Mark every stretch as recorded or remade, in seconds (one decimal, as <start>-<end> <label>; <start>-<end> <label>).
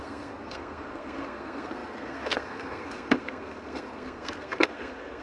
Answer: 0.0-5.2 remade